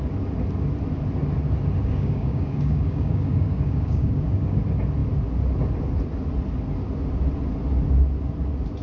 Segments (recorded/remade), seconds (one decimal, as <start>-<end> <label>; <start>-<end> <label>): 0.0-1.8 recorded; 1.8-4.6 remade; 4.6-8.8 recorded